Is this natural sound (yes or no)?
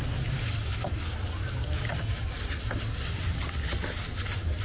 yes